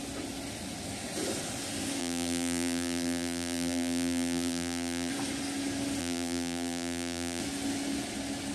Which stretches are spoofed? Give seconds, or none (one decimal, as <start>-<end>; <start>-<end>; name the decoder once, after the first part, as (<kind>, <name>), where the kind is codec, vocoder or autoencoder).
2.0-5.1 (vocoder, BigVGAN v2); 6.0-7.4